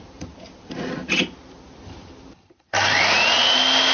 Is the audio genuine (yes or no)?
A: yes